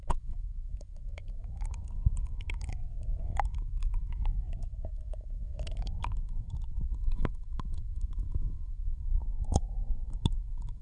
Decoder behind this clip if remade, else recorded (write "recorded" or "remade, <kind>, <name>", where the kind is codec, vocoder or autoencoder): remade, autoencoder, DAC-VAE